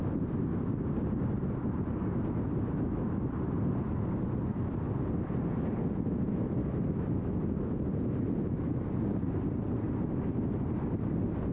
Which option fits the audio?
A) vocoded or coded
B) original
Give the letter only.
B